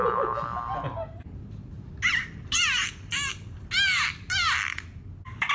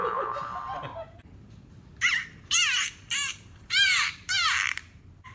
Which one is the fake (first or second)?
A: second